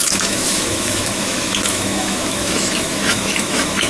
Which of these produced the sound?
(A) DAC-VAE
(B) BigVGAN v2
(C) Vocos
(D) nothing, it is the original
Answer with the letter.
A